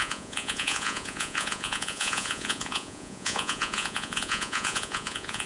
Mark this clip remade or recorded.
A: remade